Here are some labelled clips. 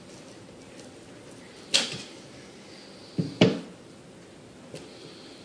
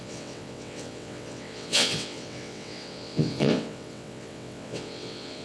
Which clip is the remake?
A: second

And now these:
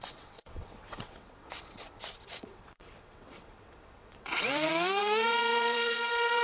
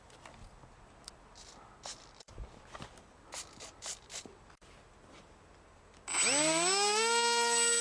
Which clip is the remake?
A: first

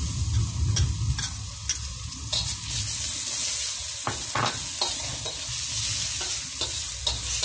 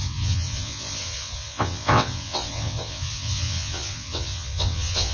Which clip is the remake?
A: second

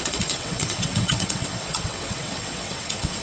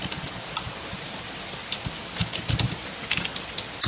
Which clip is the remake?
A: first